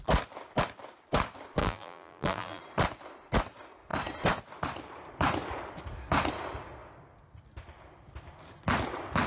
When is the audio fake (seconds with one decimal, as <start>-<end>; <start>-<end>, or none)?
1.6-2.6